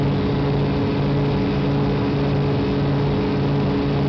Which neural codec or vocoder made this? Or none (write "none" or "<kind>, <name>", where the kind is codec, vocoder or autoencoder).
none